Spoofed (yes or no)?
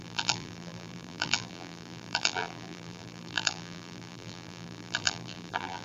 yes